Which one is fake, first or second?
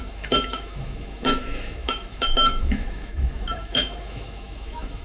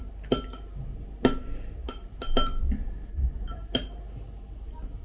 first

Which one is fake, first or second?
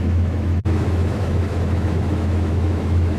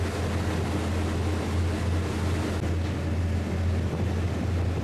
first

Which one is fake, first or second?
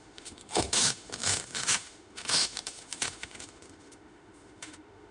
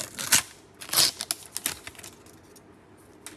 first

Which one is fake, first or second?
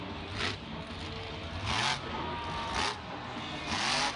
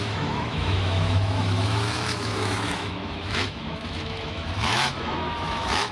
second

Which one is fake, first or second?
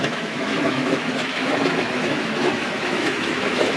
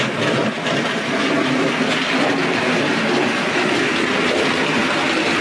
first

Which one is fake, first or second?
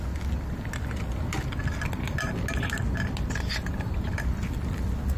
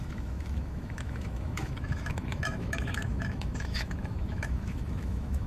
second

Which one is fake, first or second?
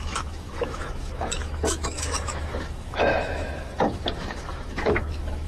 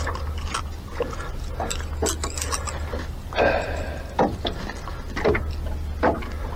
first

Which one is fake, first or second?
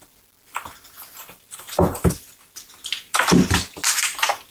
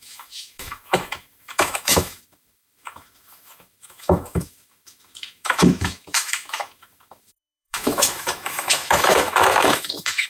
second